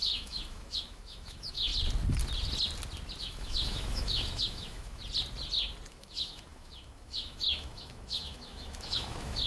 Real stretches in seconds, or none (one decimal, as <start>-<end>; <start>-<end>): 1.7-3.2; 5.0-5.9